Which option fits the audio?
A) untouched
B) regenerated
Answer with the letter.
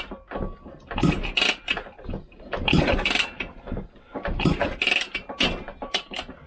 A